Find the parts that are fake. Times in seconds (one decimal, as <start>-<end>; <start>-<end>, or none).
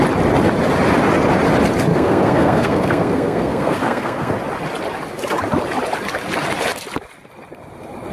1.9-4.3